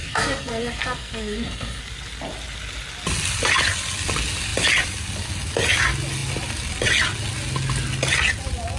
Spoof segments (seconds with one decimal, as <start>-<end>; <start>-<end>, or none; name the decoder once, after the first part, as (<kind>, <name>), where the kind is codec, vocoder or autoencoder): 0.0-1.8 (codec, SNAC)